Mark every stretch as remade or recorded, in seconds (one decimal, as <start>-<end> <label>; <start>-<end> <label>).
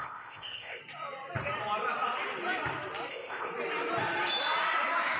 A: 0.0-0.8 remade; 0.8-3.1 recorded; 3.1-3.5 remade; 3.5-5.2 recorded